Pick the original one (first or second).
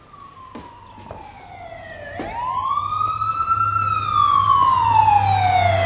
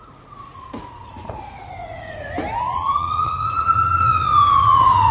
first